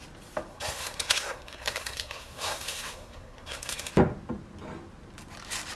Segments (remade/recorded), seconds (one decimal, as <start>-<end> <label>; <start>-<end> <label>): 0.0-0.5 recorded; 0.5-3.9 remade; 3.9-5.7 recorded